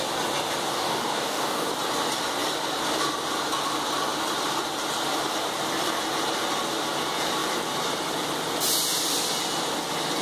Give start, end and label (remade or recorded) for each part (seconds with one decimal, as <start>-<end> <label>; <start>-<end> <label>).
0.0-0.7 recorded; 0.7-1.7 remade; 1.7-10.2 recorded